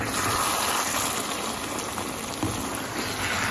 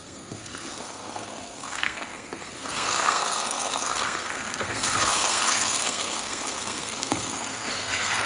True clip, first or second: first